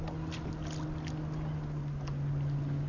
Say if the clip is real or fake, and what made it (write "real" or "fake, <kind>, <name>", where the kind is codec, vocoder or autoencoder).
real